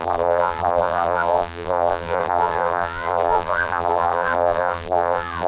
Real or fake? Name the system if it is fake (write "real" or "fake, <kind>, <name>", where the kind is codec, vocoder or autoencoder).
fake, vocoder, BigVGAN v2